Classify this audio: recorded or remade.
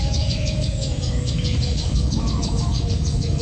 remade